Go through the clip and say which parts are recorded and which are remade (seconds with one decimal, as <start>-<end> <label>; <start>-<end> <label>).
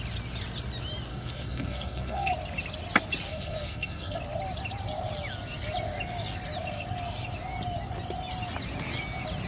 0.0-1.1 recorded; 1.1-2.3 remade; 2.3-3.3 recorded; 3.3-4.2 remade; 4.2-9.5 recorded